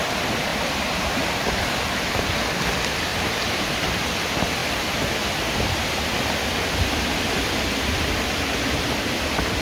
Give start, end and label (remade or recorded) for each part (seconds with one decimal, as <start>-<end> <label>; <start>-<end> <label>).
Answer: 0.0-0.5 recorded; 0.5-2.2 remade; 2.2-3.1 recorded; 3.1-3.9 remade; 3.9-9.6 recorded